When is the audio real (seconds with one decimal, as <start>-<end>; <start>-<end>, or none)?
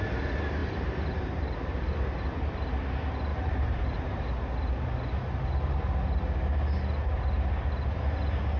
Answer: 0.0-0.6; 2.2-3.3; 4.3-8.6